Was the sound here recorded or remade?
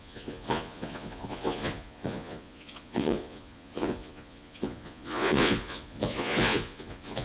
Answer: remade